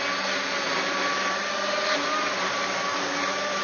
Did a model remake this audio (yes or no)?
no